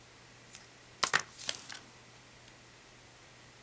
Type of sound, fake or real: real